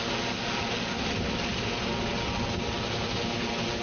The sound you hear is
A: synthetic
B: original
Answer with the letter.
B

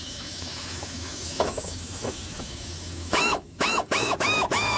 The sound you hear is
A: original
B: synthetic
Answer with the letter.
B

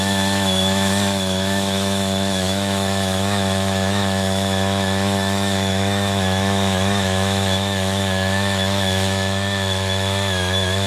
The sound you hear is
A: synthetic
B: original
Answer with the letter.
A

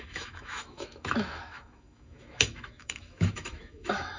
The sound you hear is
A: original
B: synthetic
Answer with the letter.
B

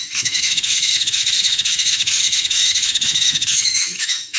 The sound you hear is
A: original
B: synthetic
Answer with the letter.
B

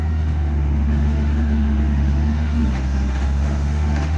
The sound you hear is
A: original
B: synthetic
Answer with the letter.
B